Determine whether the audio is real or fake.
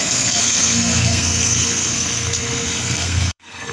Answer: fake